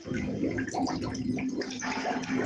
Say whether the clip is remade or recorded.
recorded